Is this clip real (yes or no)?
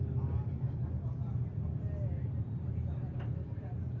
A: yes